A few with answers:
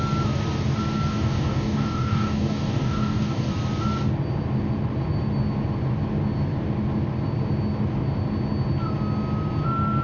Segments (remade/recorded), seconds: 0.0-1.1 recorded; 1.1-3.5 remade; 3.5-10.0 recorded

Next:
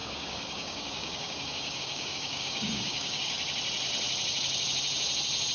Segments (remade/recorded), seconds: 0.0-3.3 remade; 3.3-5.5 recorded

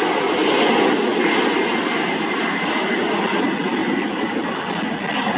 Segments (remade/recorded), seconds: 0.0-5.4 recorded